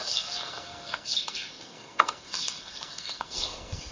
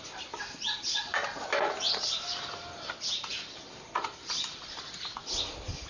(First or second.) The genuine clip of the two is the second